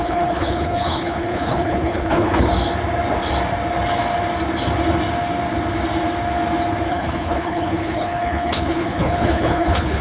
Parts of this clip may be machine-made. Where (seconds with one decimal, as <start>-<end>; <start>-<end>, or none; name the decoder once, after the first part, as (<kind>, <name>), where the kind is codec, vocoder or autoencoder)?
0.0-2.5 (codec, HILCodec); 6.9-10.0